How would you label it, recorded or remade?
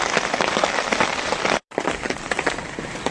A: remade